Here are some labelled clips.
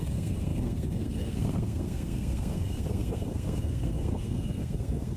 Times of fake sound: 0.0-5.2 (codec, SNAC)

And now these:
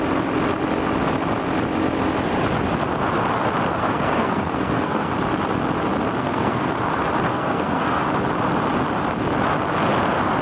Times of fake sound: 3.8-5.1 (codec, SNAC); 6.2-6.8; 7.3-8.0